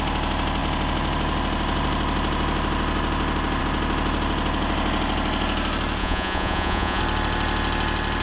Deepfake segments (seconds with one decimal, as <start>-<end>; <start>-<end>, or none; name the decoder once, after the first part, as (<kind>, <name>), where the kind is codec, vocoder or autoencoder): 6.0-7.0 (vocoder, Vocos)